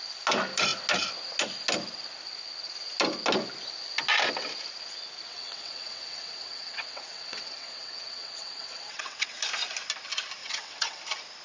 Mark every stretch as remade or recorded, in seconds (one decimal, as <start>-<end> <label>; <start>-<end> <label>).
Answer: 0.0-5.3 recorded; 5.3-9.4 remade; 9.4-10.4 recorded; 10.4-11.0 remade; 11.0-11.4 recorded